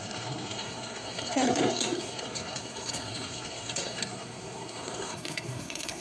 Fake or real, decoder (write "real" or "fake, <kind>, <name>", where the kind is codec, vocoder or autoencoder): fake, codec, SNAC